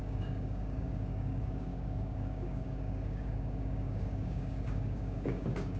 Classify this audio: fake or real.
fake